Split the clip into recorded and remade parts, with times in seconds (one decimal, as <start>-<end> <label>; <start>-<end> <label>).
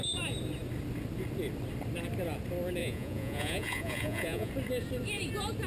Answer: 0.0-2.8 recorded; 2.8-4.5 remade; 4.5-5.7 recorded